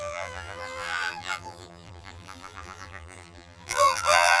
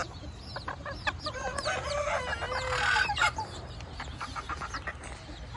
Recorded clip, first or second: second